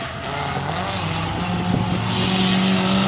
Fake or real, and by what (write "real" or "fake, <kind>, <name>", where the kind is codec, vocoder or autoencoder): real